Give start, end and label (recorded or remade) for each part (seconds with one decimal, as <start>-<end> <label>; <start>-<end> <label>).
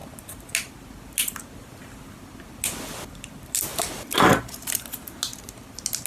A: 0.0-6.1 recorded